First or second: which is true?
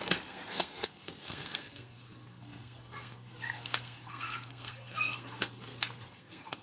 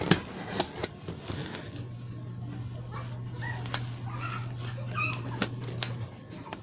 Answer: second